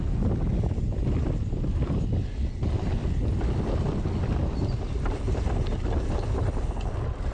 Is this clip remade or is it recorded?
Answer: recorded